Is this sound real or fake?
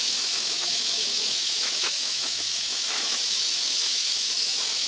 fake